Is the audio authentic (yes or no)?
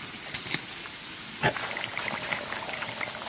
yes